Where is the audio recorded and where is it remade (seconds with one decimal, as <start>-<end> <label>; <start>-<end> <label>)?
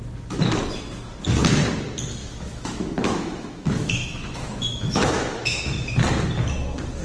0.0-2.2 recorded; 2.2-5.9 remade; 5.9-7.0 recorded